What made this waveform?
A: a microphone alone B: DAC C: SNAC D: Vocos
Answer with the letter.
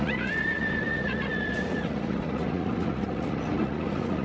D